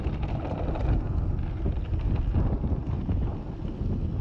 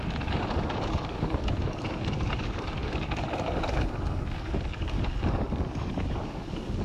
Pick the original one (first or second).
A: first